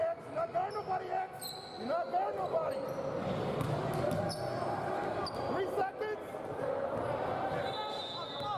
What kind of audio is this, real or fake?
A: real